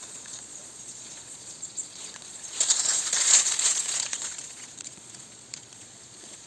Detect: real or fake fake